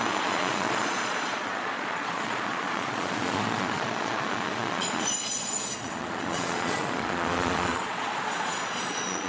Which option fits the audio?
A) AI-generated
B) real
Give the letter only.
A